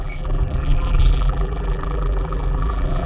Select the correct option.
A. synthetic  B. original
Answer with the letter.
A